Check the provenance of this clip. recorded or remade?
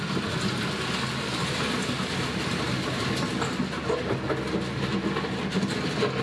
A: recorded